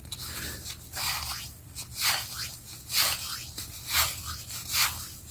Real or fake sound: real